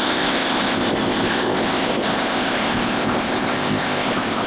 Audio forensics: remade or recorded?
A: remade